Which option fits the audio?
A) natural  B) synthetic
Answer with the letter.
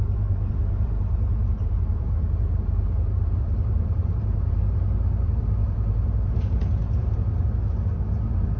B